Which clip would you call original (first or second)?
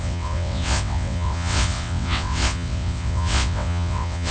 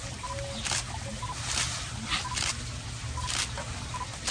second